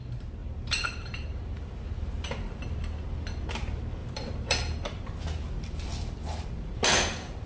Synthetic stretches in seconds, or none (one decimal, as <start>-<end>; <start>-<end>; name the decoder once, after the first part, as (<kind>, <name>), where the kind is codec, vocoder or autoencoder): 0.4-2.8 (vocoder, BigVGAN v2); 4.0-5.2